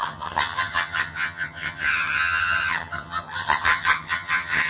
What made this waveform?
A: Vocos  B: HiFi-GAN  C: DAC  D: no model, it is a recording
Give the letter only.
B